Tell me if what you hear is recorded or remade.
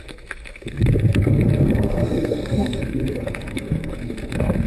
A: remade